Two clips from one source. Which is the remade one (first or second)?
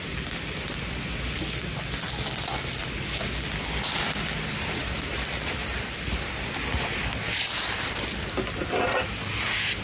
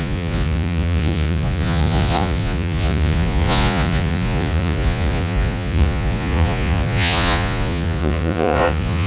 second